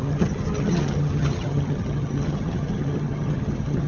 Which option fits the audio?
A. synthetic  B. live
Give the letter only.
A